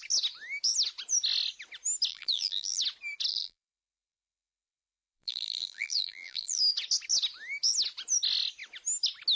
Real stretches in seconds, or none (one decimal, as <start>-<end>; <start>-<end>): 0.0-2.1; 2.8-3.3; 6.6-9.4